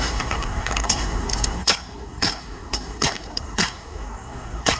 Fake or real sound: fake